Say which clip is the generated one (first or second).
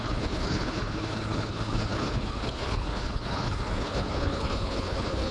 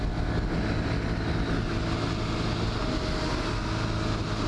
first